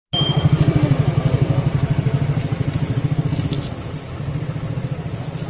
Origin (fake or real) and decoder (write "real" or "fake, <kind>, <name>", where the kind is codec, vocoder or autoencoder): real